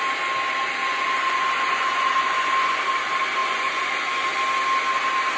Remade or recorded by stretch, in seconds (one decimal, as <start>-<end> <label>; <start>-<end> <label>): 0.0-0.8 recorded; 0.8-2.8 remade; 2.8-3.4 recorded; 3.4-3.9 remade; 3.9-5.4 recorded